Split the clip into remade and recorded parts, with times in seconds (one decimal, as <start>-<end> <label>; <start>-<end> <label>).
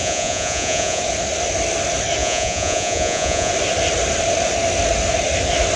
0.0-1.0 remade; 1.0-2.2 recorded; 2.2-3.5 remade; 3.5-5.8 recorded